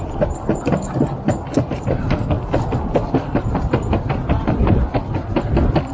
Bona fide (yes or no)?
no